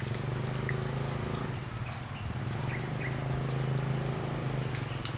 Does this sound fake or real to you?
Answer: real